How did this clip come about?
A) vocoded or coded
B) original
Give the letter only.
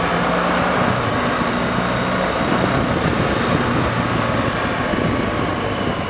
B